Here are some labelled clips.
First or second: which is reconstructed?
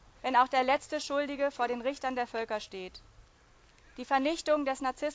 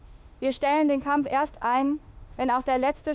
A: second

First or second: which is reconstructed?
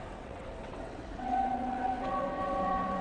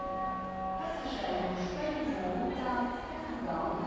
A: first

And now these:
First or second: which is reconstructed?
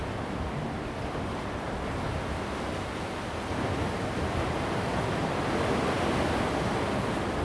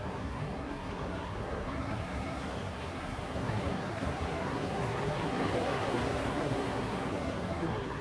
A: second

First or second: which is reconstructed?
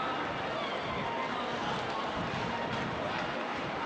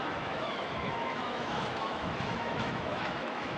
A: second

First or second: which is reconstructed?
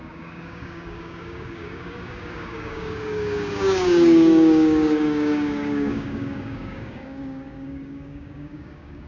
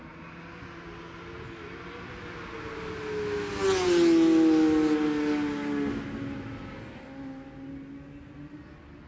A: first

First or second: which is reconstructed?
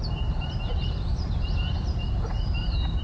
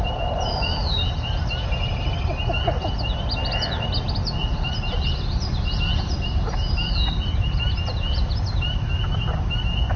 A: first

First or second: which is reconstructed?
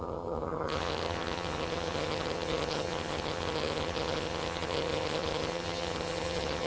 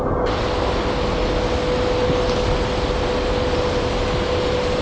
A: first